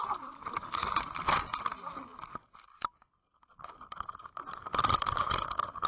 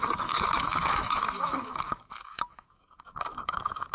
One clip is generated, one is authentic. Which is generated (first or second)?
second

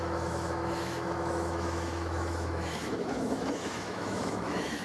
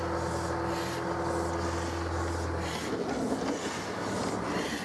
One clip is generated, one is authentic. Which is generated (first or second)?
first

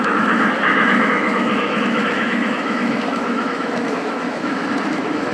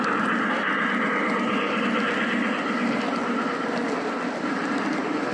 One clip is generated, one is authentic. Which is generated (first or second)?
first